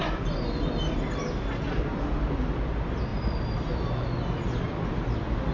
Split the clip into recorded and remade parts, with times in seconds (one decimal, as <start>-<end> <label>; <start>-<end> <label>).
0.0-5.5 recorded